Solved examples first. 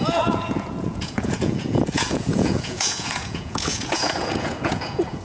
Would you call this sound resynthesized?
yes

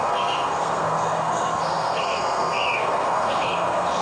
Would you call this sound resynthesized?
yes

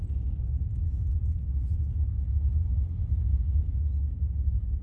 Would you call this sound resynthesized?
no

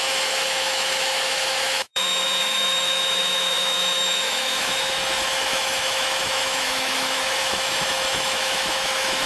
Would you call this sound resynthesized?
yes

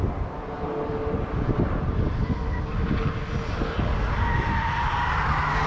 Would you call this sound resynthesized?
no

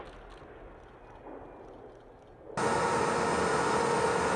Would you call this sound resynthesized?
no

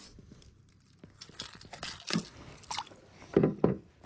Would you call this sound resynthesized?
no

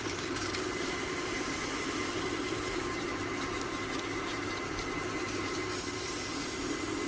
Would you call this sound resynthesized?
yes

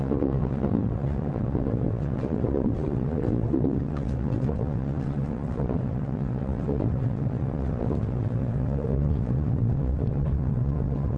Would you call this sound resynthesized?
yes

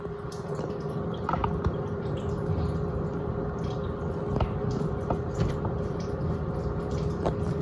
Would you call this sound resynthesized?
no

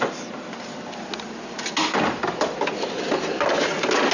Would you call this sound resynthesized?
no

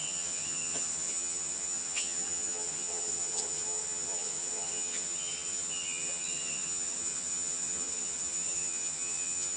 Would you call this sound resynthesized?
yes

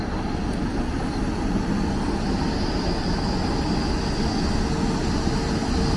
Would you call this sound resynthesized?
no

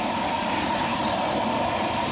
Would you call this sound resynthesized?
no